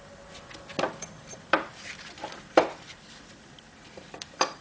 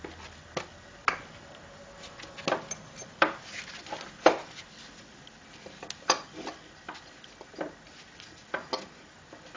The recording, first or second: second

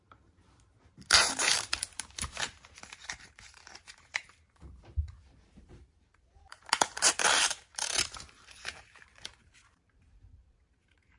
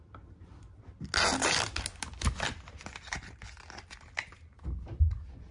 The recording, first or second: second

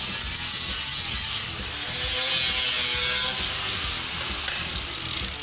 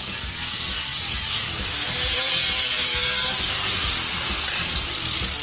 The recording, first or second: first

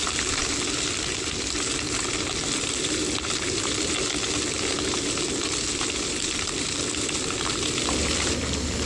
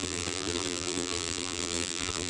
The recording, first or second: first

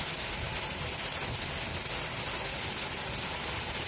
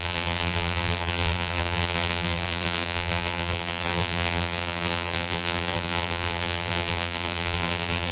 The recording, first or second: first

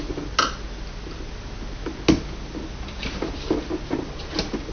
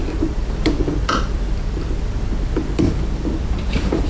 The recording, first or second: first